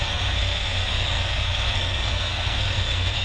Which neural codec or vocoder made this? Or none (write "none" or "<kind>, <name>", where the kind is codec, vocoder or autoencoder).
codec, SNAC